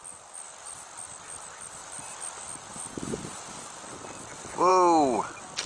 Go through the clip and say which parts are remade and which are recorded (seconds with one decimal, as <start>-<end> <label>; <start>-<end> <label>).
0.0-5.7 recorded